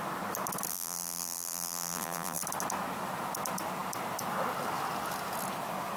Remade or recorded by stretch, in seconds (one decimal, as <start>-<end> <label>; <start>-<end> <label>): 0.0-0.7 recorded; 0.7-2.4 remade; 2.4-6.0 recorded